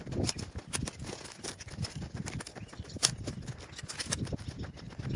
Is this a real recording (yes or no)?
yes